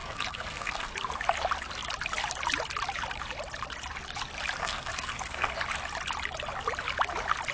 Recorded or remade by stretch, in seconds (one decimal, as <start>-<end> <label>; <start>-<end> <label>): 0.0-0.9 remade; 0.9-4.6 recorded; 4.6-5.5 remade; 5.5-7.5 recorded